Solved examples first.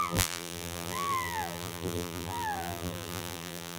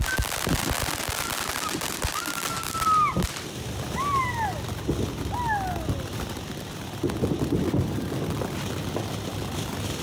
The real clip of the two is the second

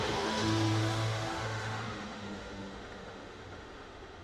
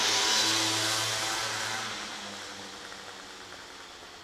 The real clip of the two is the second